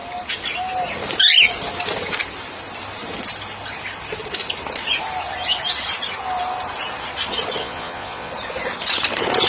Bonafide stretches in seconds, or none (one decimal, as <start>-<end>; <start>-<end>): 0.0-7.6; 8.3-9.5